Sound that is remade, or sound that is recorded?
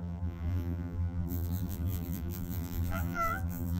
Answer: remade